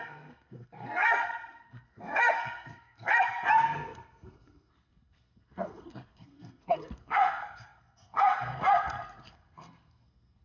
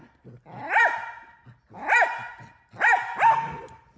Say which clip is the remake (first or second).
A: first